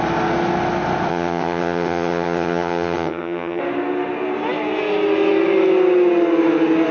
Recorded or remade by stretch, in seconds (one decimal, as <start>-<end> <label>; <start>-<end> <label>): 0.0-1.1 recorded; 1.1-3.6 remade; 3.6-6.9 recorded